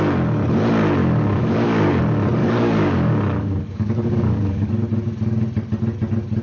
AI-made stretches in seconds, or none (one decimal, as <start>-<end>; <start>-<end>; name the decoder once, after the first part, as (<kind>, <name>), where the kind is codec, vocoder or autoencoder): 1.0-2.0 (codec, DAC); 2.4-4.7